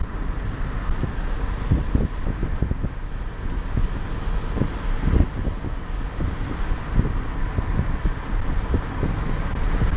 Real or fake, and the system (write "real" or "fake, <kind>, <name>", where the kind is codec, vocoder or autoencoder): real